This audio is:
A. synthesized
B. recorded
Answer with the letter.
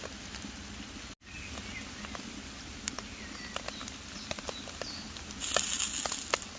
B